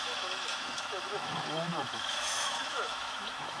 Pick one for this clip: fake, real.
fake